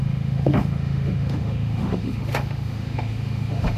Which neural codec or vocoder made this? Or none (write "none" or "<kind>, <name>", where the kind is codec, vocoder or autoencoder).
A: autoencoder, DAC-VAE